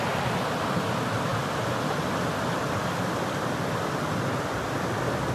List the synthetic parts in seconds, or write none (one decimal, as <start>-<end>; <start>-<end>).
none